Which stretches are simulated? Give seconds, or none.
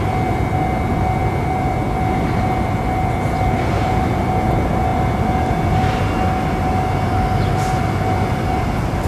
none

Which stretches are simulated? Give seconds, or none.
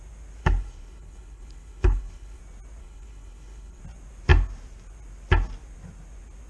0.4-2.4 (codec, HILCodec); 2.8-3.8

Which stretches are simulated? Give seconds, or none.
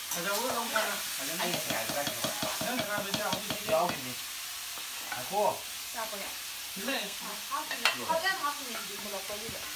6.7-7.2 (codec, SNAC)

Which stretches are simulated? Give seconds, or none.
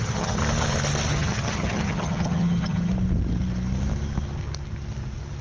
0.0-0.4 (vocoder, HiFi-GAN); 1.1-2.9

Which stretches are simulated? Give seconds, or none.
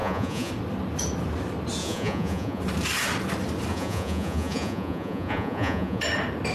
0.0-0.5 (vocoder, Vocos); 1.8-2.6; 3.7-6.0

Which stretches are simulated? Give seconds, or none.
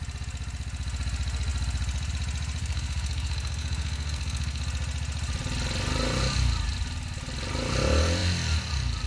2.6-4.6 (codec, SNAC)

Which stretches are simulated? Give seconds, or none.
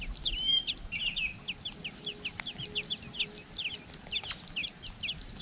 none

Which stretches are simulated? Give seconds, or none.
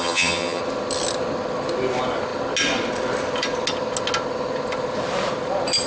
0.0-0.6 (vocoder, HiFi-GAN)